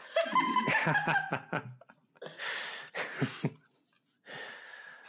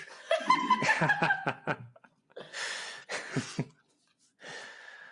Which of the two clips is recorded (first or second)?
first